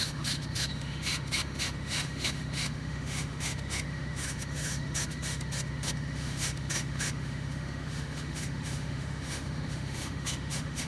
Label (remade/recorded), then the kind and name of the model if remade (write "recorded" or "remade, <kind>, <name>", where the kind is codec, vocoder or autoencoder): remade, autoencoder, DAC-VAE